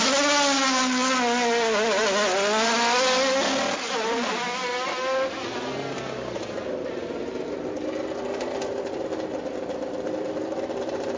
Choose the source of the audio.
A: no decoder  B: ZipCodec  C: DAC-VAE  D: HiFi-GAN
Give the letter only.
A